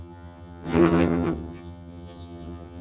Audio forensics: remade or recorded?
remade